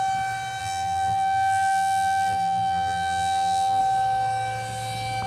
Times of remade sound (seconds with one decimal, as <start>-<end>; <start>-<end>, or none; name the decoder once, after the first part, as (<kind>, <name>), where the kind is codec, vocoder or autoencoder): 0.6-3.8 (vocoder, BigVGAN v2)